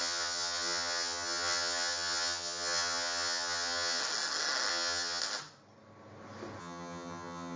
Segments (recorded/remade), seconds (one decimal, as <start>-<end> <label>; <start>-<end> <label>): 0.0-4.0 remade; 4.0-4.7 recorded; 4.7-5.2 remade; 5.2-6.6 recorded; 6.6-7.6 remade